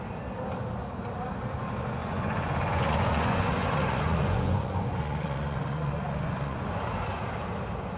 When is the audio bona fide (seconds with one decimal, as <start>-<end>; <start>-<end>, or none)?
0.0-2.0; 6.8-8.0